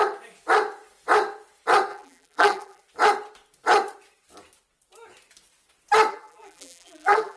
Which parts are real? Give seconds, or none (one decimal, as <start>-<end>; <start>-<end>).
0.0-1.9; 2.8-6.1